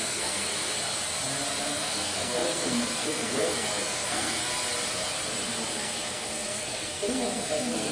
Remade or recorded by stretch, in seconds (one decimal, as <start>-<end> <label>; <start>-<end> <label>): 0.0-0.5 remade; 0.5-1.6 recorded; 1.6-4.5 remade; 4.5-5.7 recorded; 5.7-7.9 remade